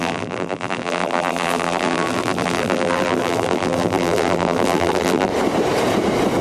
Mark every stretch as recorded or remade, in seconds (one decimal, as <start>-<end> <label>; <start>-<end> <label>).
0.0-5.3 remade; 5.3-6.4 recorded